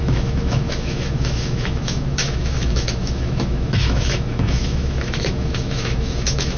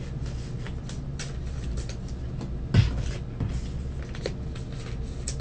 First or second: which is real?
second